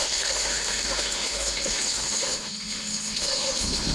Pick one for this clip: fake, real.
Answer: fake